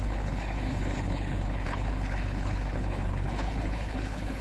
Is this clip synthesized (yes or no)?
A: yes